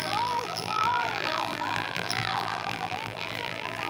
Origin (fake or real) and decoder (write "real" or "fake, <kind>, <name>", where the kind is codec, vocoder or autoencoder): fake, vocoder, BigVGAN v2